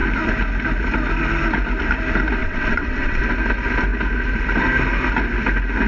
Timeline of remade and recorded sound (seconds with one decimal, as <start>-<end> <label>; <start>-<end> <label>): 0.0-2.4 recorded; 2.4-3.2 remade; 3.2-5.9 recorded

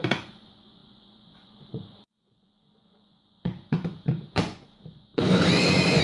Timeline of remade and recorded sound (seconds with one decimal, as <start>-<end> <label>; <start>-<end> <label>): 0.0-6.0 remade

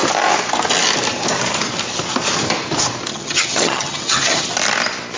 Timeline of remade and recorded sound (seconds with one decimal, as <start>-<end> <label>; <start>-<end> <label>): 0.0-3.1 recorded; 3.1-4.5 remade; 4.5-5.2 recorded

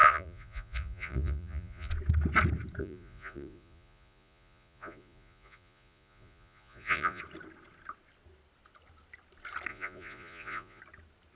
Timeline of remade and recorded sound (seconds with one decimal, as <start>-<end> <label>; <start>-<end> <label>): 0.0-1.9 remade; 1.9-2.8 recorded; 2.8-7.2 remade; 7.2-9.7 recorded; 9.7-10.8 remade; 10.8-11.4 recorded

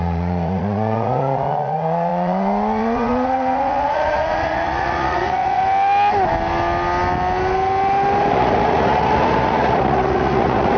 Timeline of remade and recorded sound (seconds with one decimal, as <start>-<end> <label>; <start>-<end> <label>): 0.0-5.6 remade; 5.6-8.3 recorded; 8.3-10.8 remade

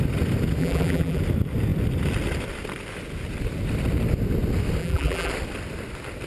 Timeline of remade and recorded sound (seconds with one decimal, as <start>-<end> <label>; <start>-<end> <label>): 0.0-0.6 recorded; 0.6-1.2 remade; 1.2-4.8 recorded; 4.8-5.3 remade; 5.3-6.3 recorded

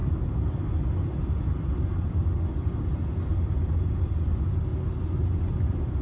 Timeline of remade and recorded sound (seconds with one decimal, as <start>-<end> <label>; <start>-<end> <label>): 0.0-3.6 recorded; 3.6-4.7 remade; 4.7-5.4 recorded; 5.4-6.0 remade